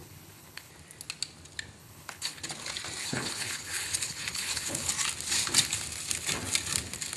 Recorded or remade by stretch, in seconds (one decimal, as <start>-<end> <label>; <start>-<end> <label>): 0.0-0.7 remade; 0.7-1.8 recorded; 1.8-2.4 remade; 2.4-3.0 recorded; 3.0-4.9 remade; 4.9-7.2 recorded